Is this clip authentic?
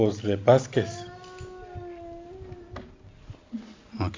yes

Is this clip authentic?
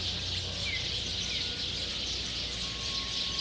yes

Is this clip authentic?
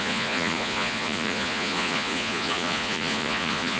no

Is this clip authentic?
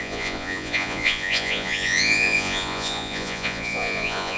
no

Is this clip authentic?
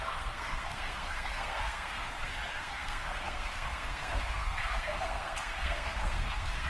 no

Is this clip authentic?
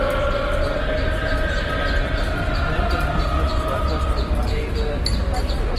yes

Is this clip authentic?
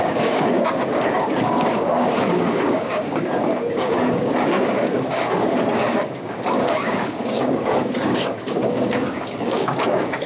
no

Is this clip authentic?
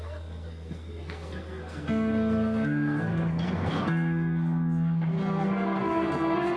no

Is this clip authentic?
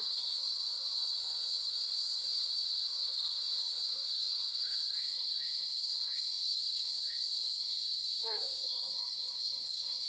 no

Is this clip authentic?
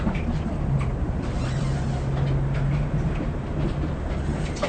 yes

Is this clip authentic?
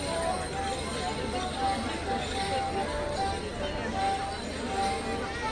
yes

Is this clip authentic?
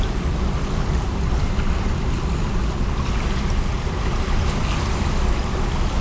yes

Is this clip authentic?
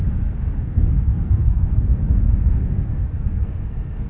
no